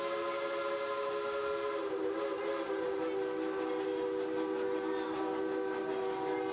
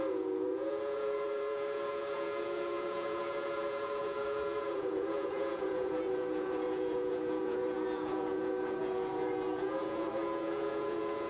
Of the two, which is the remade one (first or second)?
second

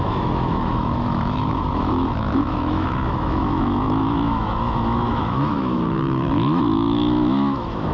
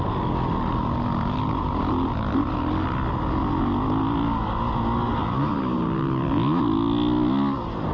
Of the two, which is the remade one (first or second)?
first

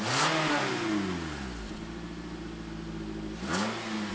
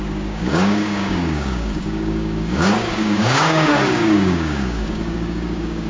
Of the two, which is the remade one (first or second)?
second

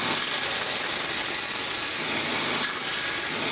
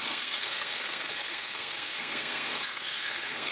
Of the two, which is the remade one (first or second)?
second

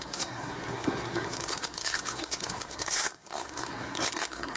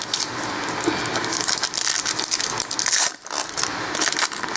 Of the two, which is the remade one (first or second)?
first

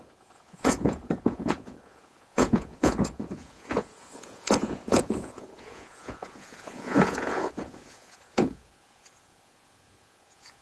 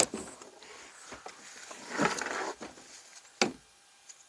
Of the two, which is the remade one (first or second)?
first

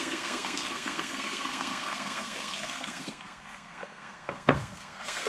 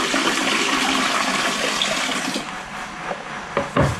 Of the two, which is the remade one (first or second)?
first